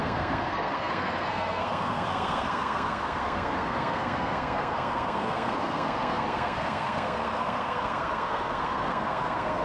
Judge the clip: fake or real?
fake